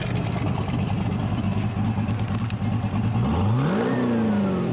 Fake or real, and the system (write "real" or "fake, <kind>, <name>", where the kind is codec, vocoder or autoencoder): real